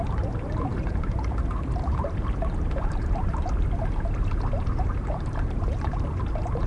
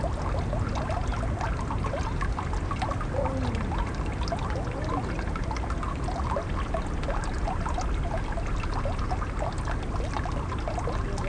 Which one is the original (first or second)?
second